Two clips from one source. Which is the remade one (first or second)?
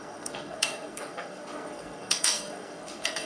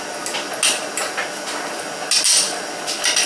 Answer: first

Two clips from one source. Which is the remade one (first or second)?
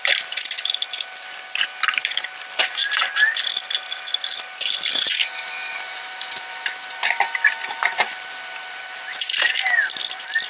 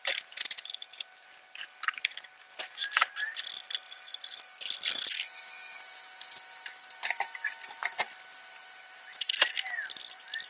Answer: first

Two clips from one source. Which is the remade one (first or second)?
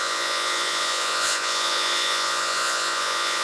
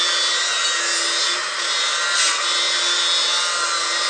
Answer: first